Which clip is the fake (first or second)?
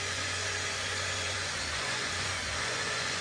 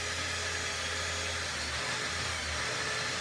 first